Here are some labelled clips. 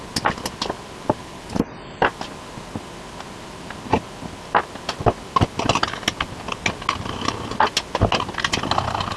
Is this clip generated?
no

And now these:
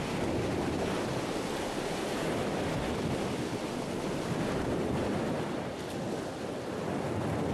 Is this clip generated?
no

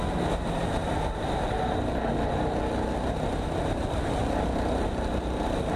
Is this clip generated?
no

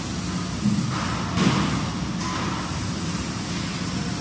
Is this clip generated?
no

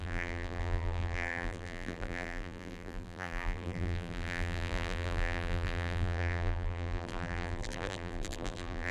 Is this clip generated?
yes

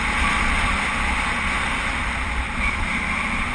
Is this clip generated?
no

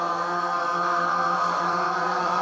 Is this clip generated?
yes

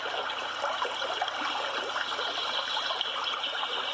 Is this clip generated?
no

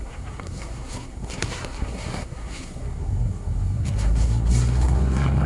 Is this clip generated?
yes